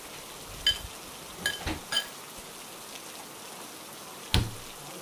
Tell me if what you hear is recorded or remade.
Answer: recorded